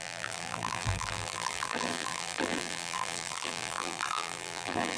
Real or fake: fake